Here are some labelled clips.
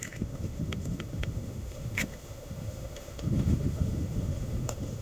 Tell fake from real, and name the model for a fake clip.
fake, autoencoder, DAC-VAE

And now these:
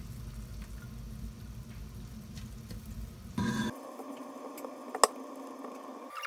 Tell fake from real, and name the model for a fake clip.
real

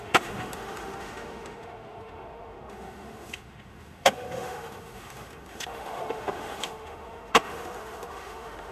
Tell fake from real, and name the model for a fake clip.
fake, autoencoder, DAC-VAE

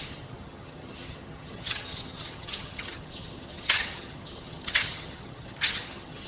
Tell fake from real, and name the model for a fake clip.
fake, vocoder, HiFi-GAN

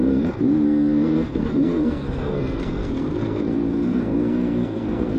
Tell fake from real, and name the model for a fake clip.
fake, codec, SNAC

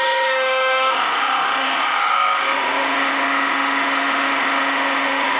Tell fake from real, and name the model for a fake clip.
fake, autoencoder, DAC-VAE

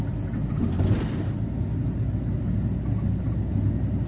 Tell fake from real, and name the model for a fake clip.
real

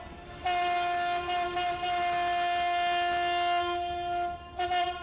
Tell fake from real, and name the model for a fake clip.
real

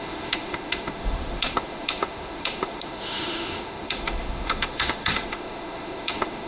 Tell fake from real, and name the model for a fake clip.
fake, autoencoder, DAC-VAE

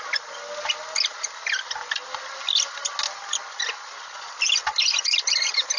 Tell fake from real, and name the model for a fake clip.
real